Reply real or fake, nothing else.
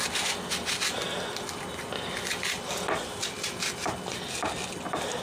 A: real